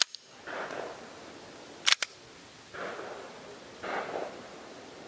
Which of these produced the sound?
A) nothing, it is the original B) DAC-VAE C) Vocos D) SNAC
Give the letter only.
A